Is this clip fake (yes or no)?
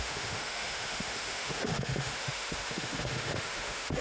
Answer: yes